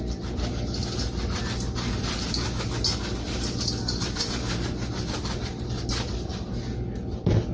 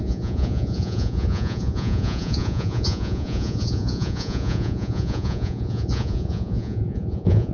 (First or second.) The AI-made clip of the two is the second